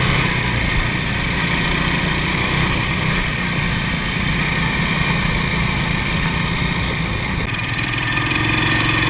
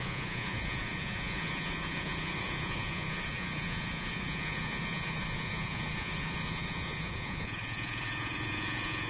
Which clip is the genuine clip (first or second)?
first